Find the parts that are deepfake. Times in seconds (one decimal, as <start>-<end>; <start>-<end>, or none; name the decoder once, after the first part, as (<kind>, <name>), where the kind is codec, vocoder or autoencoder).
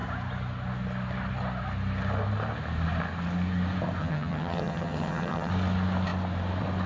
4.0-5.5 (vocoder, HiFi-GAN)